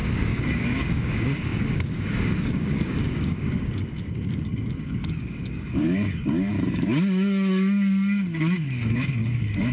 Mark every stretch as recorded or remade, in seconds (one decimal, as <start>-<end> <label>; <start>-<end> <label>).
0.0-9.7 remade